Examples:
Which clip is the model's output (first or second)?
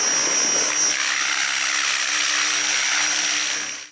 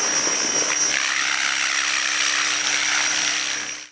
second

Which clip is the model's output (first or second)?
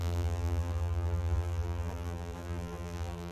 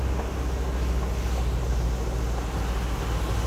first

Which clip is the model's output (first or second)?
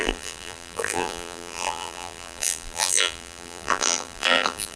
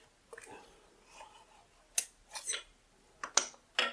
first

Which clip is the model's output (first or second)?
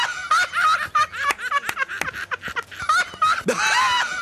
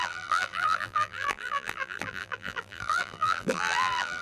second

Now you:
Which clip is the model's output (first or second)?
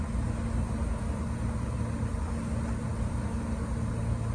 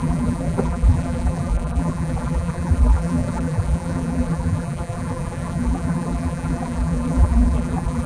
second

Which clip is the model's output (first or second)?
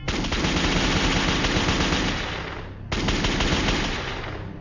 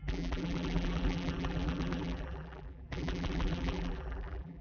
second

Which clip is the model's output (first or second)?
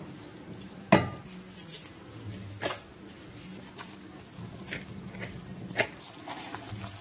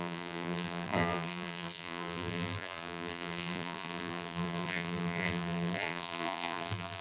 second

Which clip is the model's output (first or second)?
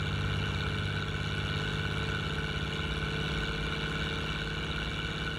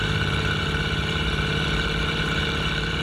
second